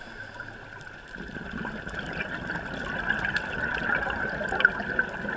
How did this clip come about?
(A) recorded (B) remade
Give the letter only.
A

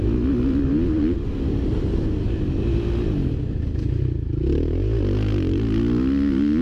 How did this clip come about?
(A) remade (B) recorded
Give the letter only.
B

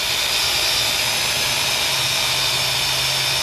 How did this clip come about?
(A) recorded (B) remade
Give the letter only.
A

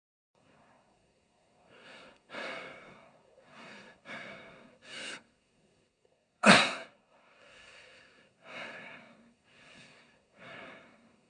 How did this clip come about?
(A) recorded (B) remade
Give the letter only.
B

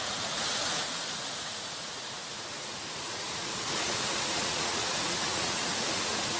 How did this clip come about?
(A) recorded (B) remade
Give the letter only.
B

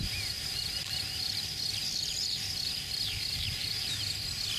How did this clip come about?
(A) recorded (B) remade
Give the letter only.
A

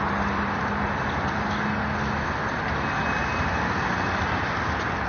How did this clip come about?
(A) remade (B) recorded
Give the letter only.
B